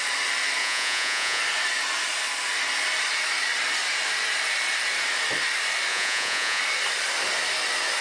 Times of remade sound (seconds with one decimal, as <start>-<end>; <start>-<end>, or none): 0.6-1.4; 5.9-6.6